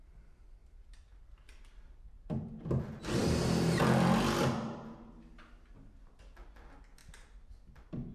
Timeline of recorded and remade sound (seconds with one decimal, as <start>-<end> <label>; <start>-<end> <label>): 0.0-8.1 recorded